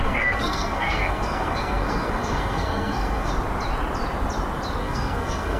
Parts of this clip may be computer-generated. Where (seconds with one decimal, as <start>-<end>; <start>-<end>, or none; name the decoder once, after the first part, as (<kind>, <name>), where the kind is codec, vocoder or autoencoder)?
0.0-3.3 (codec, SNAC); 4.8-5.6